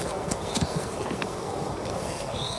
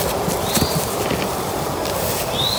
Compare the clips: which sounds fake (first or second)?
first